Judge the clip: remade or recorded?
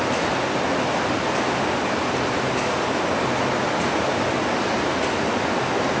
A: recorded